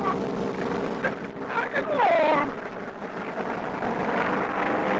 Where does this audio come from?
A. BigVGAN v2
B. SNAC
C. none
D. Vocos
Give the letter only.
C